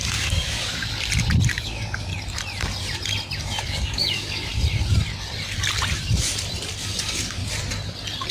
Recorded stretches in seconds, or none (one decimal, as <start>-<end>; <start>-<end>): 0.7-1.5; 2.1-3.6; 4.5-6.8; 7.4-8.3